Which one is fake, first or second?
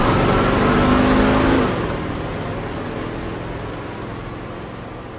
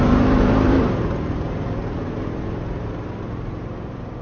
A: second